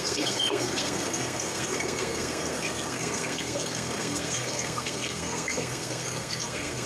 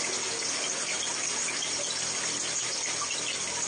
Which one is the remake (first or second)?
first